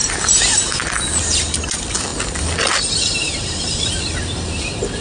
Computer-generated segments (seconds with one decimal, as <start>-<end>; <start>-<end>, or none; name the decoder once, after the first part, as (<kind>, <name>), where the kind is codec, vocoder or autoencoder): none